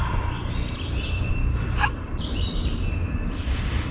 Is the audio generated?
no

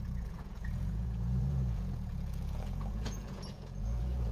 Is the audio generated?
yes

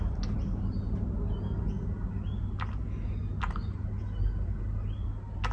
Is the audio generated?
no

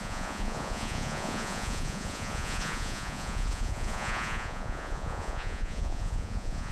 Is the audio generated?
yes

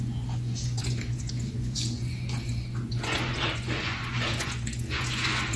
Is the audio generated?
yes